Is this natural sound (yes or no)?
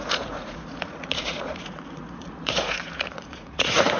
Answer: no